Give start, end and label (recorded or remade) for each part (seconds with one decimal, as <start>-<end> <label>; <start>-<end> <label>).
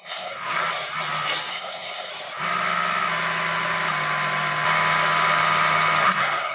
0.0-0.6 remade; 0.6-1.5 recorded; 1.5-2.1 remade; 2.1-6.0 recorded; 6.0-6.5 remade